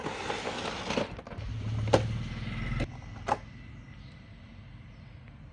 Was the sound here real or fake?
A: real